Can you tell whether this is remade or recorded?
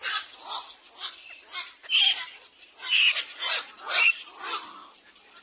recorded